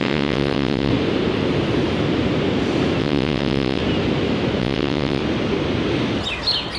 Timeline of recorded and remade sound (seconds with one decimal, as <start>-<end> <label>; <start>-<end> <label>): 0.0-0.9 remade; 0.9-3.0 recorded; 3.0-3.8 remade; 3.8-4.6 recorded; 4.6-5.2 remade; 5.2-6.8 recorded